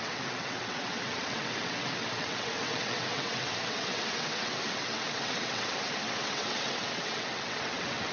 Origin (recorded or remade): remade